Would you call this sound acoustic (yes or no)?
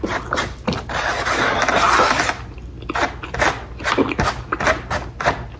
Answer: yes